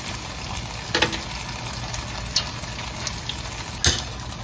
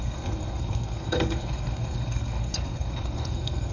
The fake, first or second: second